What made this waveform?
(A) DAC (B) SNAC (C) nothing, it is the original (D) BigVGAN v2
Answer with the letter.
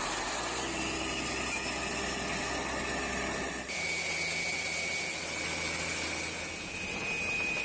C